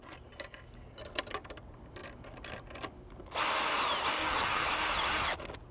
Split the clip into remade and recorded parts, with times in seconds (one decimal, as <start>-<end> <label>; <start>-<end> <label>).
0.0-4.2 recorded; 4.2-4.7 remade; 4.7-5.7 recorded